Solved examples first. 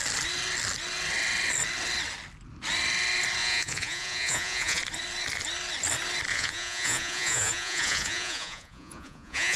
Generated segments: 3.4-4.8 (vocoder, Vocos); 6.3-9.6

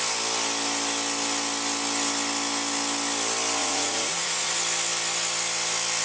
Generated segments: 3.6-4.5 (vocoder, Vocos)

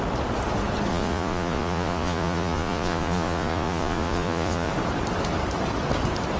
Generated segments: 0.9-4.7 (vocoder, Vocos)

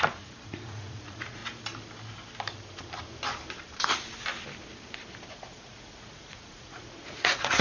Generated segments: 0.0-1.4 (vocoder, Vocos); 5.3-7.6

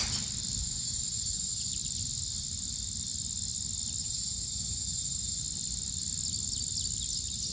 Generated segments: 0.6-1.7 (vocoder, Vocos); 4.0-5.4